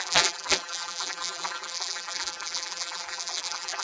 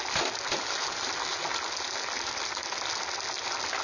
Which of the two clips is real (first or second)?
second